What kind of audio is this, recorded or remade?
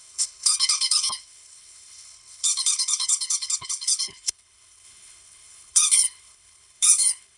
remade